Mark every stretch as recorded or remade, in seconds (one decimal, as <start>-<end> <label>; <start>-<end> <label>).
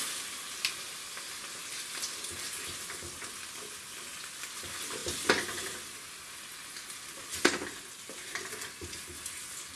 0.0-9.8 recorded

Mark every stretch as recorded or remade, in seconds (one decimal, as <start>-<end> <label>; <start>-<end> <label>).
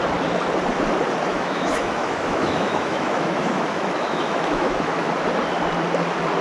0.0-1.3 recorded; 1.3-5.1 remade; 5.1-6.4 recorded